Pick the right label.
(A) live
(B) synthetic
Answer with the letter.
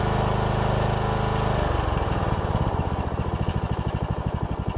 A